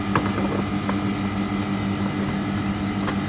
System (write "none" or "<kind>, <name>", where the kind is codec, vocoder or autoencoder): none